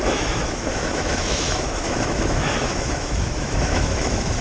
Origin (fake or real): fake